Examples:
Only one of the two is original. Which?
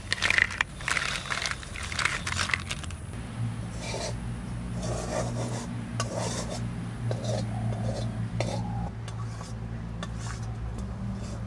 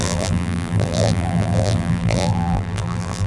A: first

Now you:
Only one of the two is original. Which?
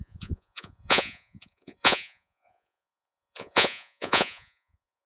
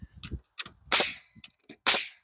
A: second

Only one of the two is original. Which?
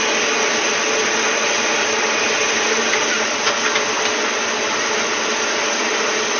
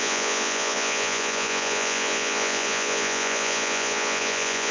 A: first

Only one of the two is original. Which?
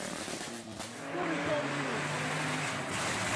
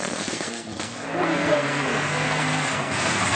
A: first